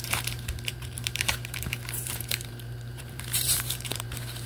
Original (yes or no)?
no